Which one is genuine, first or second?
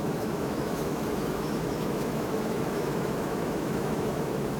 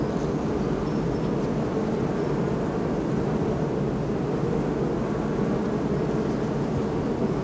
second